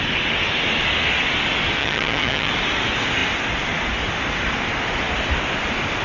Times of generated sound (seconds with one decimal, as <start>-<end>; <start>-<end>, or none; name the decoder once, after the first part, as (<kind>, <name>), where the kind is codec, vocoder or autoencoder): 1.8-2.5 (vocoder, HiFi-GAN)